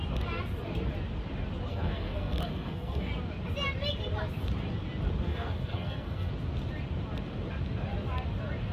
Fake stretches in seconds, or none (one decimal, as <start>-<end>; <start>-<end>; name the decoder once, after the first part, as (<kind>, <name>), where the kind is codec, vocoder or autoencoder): 1.7-3.1 (codec, SNAC); 5.3-6.3